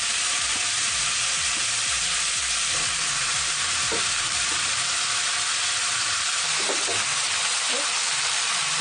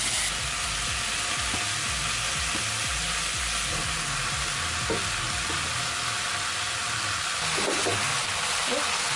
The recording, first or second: second